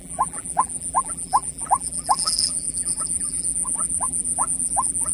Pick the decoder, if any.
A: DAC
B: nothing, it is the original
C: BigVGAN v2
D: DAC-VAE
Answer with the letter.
C